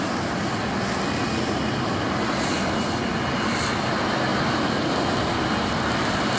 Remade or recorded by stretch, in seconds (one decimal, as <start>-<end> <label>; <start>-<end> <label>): 0.0-6.4 recorded